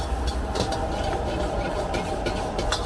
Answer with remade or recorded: recorded